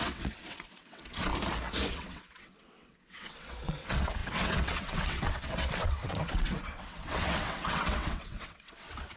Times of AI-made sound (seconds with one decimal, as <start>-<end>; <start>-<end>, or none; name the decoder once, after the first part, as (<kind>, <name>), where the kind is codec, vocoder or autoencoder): 0.0-1.3 (vocoder, WaveNeXt); 1.9-9.2